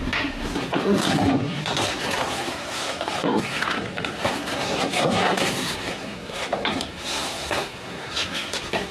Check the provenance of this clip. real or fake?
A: fake